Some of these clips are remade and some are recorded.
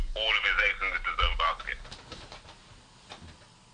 recorded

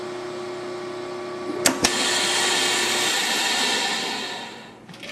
recorded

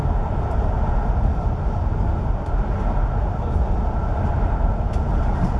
recorded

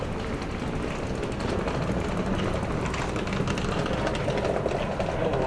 recorded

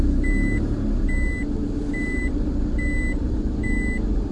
recorded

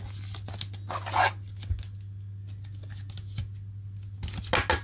recorded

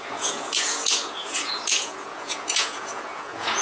remade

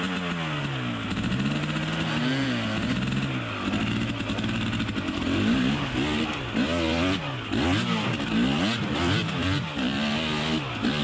recorded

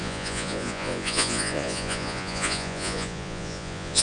remade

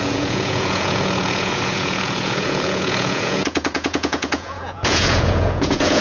remade